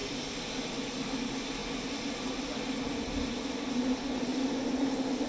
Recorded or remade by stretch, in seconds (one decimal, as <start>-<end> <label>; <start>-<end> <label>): 0.0-0.5 remade; 0.5-4.3 recorded; 4.3-5.3 remade